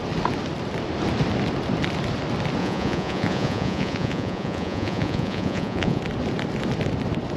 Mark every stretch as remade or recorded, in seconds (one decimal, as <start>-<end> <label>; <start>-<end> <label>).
0.0-2.6 recorded; 2.6-6.0 remade; 6.0-7.4 recorded